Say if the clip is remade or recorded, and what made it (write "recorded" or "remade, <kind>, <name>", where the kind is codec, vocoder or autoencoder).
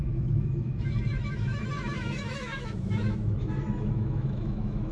remade, autoencoder, DAC-VAE